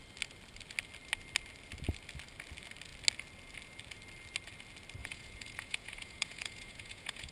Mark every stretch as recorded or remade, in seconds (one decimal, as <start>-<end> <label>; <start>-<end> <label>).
0.0-5.0 recorded; 5.0-7.3 remade